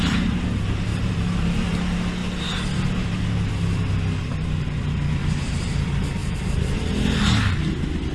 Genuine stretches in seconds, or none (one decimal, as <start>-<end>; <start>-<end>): 0.0-0.9; 1.4-5.2; 5.7-6.2; 6.8-8.1